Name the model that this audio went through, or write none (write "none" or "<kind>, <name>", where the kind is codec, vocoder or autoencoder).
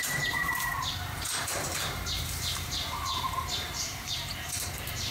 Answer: vocoder, BigVGAN v2